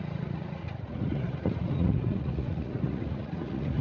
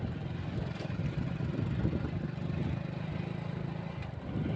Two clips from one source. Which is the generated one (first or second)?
first